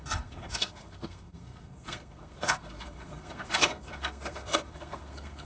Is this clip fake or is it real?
fake